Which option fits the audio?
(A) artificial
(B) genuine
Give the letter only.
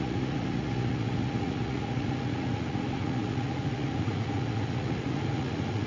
A